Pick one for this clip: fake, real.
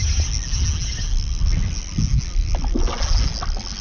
real